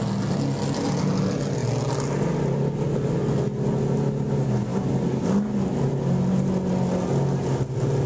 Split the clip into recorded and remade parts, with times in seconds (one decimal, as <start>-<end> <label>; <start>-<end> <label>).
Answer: 0.0-8.1 recorded